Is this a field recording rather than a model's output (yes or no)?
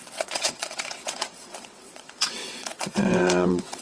no